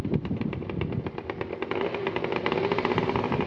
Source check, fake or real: real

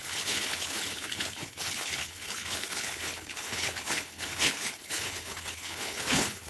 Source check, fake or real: fake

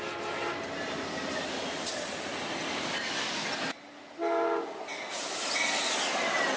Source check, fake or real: real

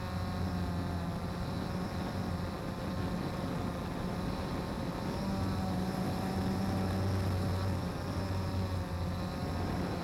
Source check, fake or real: real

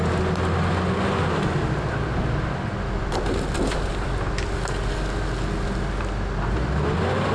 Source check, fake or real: real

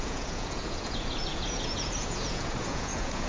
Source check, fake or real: fake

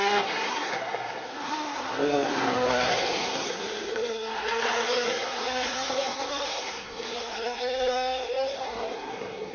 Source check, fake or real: fake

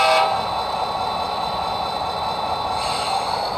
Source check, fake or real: real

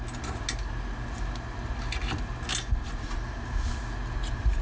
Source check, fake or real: real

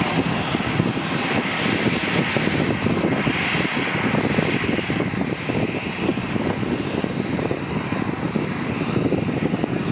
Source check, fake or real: real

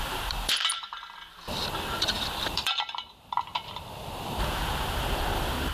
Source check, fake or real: fake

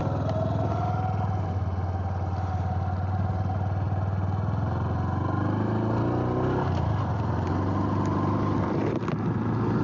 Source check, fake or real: real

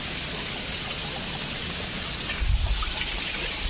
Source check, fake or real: real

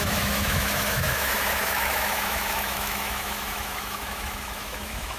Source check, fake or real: fake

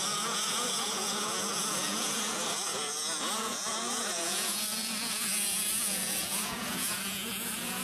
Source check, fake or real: fake